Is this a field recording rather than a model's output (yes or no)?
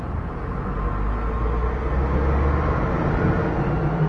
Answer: yes